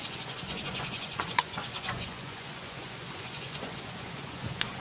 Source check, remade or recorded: remade